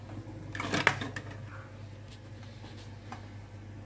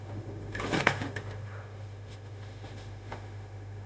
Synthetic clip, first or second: second